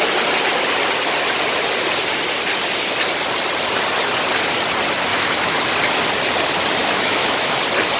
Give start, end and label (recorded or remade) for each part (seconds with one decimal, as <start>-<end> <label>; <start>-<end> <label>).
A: 0.0-5.1 recorded; 5.1-5.6 remade; 5.6-6.8 recorded; 6.8-7.6 remade; 7.6-8.0 recorded